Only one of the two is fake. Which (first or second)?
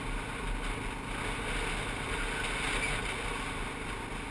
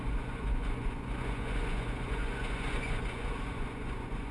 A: second